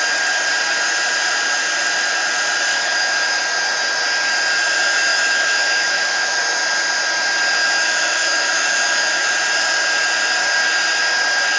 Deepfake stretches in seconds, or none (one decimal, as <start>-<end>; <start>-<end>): 2.7-3.4; 5.1-6.4; 7.6-9.3

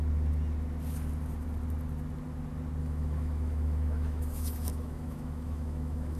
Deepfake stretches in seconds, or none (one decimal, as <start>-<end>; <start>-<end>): 2.8-6.2

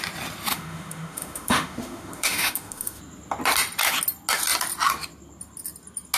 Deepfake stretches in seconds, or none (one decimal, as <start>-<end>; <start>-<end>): 0.5-3.0

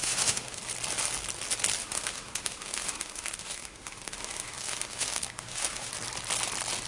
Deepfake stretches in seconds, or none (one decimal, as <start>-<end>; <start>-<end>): 0.0-0.6; 1.8-5.9

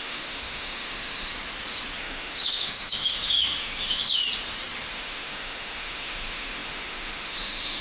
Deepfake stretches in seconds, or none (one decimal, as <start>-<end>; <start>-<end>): 0.0-1.3; 2.0-4.2; 4.9-7.8

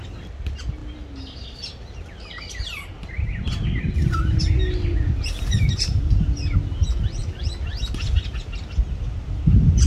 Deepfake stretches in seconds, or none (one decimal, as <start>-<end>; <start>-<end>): none

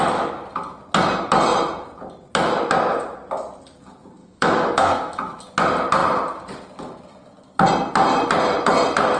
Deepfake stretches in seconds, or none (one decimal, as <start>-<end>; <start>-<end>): 4.2-5.4